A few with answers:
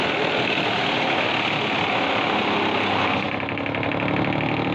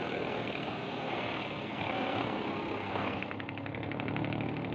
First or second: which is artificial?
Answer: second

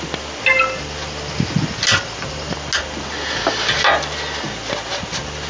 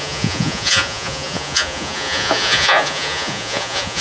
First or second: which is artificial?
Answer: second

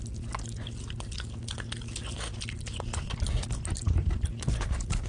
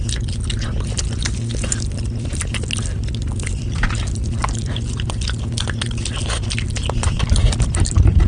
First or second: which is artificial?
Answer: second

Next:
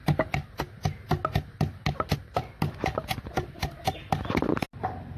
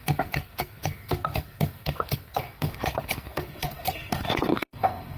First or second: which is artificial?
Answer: second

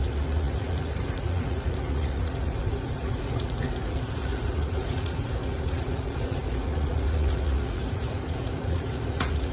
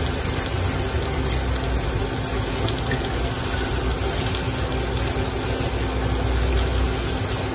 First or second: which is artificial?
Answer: first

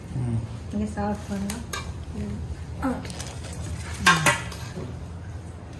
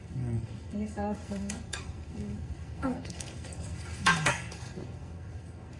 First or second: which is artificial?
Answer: second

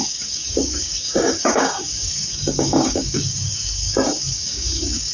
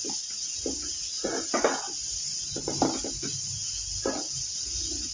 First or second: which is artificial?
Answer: first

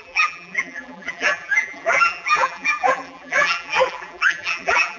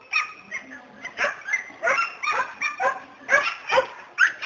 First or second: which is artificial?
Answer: first